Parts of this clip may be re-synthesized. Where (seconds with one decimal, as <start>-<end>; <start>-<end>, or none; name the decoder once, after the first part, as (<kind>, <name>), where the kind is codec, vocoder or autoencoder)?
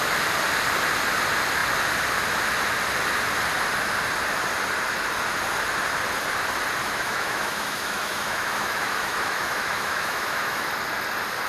6.8-10.7 (autoencoder, DAC-VAE)